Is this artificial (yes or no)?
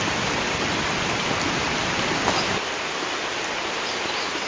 no